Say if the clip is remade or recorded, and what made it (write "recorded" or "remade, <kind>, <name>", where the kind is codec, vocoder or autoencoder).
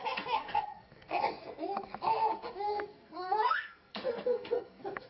remade, codec, SNAC